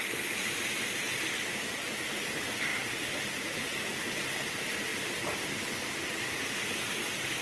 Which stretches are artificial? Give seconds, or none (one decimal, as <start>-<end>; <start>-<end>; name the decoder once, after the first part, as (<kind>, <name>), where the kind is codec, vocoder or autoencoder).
none